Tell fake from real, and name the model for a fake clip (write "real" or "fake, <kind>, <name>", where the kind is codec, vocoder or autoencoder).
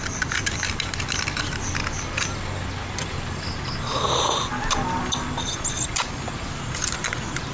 real